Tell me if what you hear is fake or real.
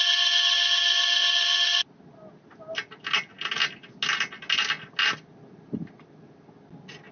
real